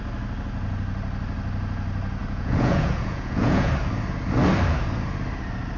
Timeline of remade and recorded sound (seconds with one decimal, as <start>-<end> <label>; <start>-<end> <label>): 0.0-2.2 recorded; 2.2-3.7 remade; 3.7-5.8 recorded